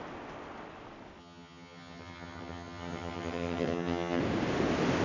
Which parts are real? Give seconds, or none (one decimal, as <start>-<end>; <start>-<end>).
0.0-1.2; 4.2-5.0

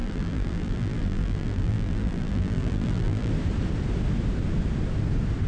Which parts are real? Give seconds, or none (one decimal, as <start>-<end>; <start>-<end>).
3.3-5.5

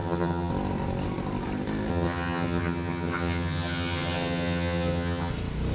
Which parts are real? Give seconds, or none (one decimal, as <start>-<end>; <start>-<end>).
0.5-1.9; 5.3-5.7

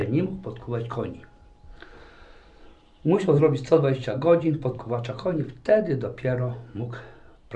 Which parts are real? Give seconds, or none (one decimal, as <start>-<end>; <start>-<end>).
0.0-2.8; 3.4-4.0; 5.4-7.6

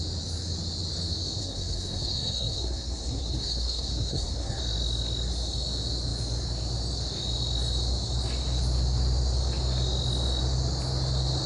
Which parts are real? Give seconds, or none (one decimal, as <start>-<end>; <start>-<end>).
0.0-1.4; 4.6-11.5

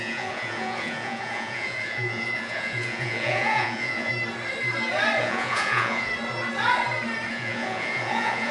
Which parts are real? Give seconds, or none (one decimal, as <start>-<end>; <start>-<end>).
4.1-5.2; 6.1-7.3